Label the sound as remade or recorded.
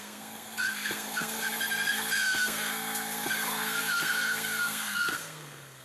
remade